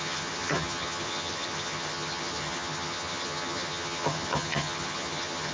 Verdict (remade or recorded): remade